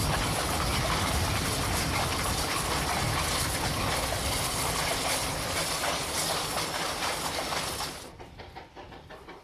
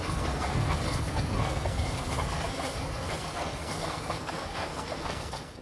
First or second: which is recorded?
first